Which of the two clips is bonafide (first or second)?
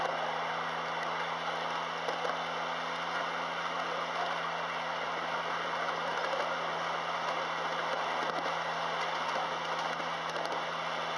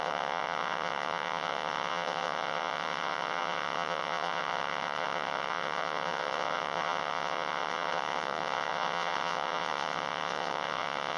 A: first